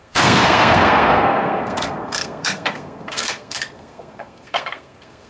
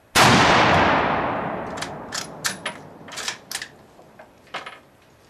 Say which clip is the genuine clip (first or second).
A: second